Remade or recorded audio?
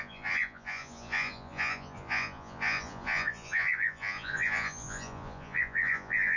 remade